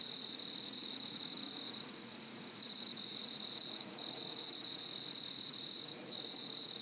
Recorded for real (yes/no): no